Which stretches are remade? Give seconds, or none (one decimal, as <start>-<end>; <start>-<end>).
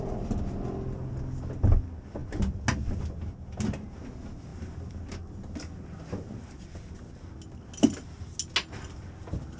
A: none